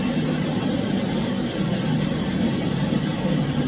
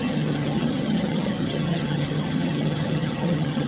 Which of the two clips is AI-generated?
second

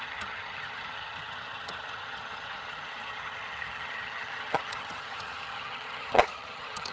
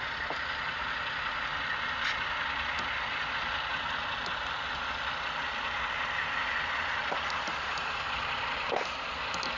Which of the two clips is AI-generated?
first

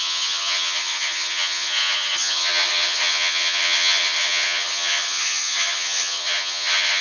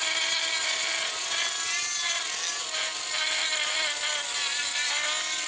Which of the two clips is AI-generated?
first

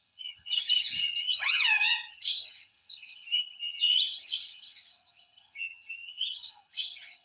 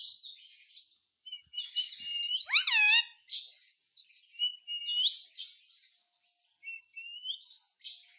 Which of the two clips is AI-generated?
first